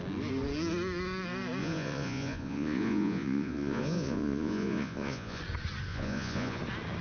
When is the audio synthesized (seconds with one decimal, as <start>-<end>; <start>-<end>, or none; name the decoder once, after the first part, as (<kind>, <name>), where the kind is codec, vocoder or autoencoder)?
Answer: 1.6-5.4 (vocoder, Vocos); 5.9-6.6